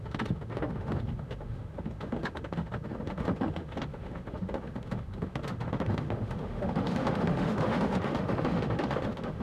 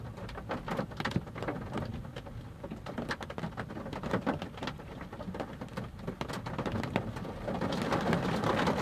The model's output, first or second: first